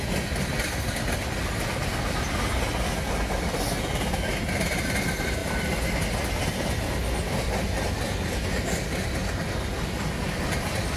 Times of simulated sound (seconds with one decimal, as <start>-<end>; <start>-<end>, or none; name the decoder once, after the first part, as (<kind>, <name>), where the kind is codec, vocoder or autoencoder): 5.4-6.0 (vocoder, BigVGAN v2); 9.2-9.9